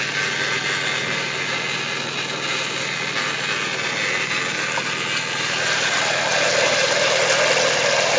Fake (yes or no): no